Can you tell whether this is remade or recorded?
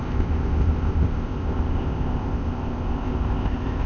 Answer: remade